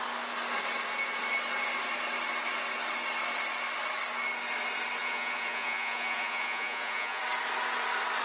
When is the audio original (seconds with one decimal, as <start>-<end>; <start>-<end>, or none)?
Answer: 0.0-5.0; 7.2-8.2